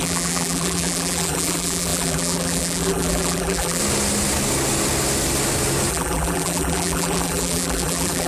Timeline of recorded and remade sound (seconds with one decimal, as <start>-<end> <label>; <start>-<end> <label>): 0.0-3.8 remade; 3.8-5.9 recorded; 5.9-8.3 remade